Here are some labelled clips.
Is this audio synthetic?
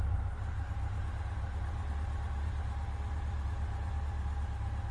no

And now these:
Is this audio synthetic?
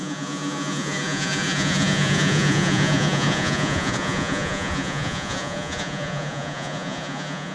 yes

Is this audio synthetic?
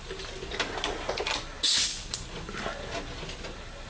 no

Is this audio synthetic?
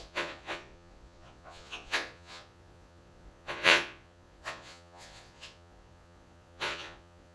yes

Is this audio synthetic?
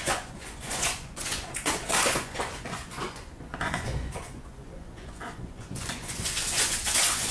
yes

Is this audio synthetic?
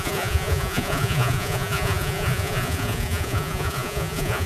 yes